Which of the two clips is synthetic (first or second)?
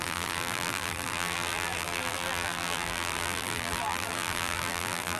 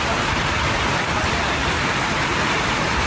first